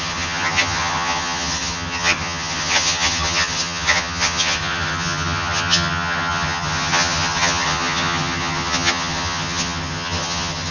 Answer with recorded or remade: remade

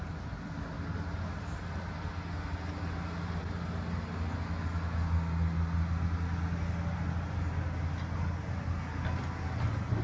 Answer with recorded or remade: recorded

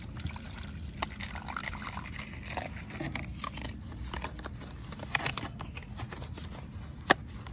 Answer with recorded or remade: recorded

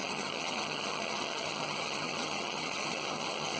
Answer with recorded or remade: remade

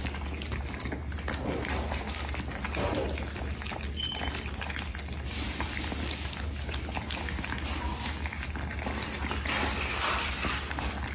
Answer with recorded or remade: recorded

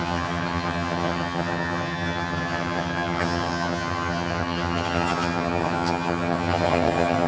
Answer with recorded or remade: remade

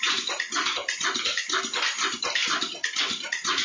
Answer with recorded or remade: recorded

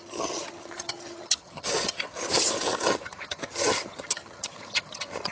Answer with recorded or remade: remade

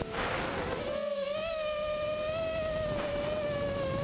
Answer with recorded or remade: recorded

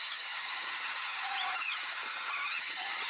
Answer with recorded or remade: remade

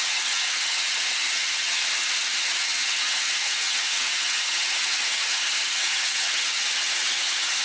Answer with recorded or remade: remade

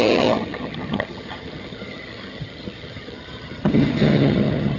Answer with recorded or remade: remade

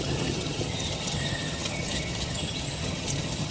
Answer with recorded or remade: remade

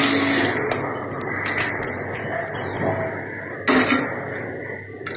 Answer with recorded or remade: recorded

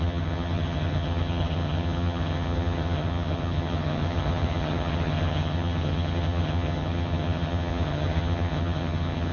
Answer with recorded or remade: remade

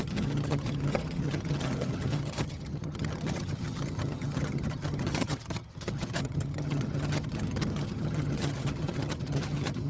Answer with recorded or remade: remade